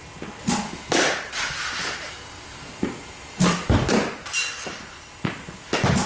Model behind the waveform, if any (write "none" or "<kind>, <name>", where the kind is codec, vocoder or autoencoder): none